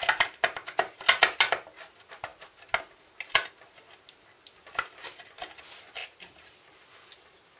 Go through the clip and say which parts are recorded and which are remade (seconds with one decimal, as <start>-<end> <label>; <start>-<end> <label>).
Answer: 0.0-7.6 recorded